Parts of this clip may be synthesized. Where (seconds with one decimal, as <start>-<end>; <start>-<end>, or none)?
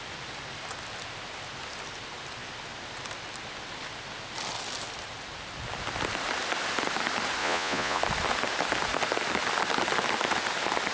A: 7.4-8.0